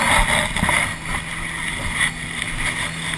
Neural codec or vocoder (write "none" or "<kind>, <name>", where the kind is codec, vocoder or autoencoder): none